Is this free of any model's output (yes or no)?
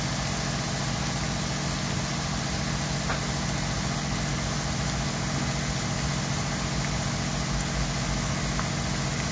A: yes